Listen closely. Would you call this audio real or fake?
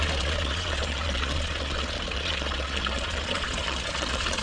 fake